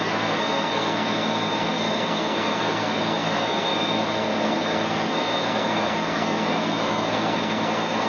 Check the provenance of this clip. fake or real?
fake